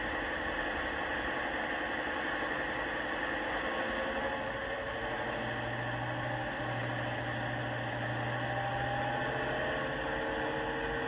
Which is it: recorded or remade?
recorded